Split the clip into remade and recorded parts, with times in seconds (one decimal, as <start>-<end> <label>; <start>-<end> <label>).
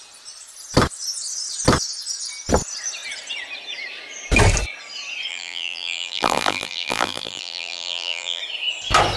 0.0-5.3 recorded; 5.3-8.4 remade; 8.4-9.2 recorded